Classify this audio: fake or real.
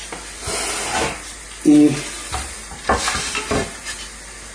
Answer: real